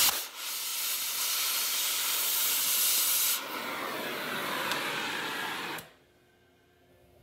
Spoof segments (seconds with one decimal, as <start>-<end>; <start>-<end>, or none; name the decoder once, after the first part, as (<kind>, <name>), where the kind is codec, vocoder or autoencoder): none